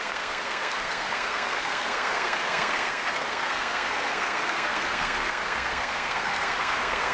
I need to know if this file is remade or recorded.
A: remade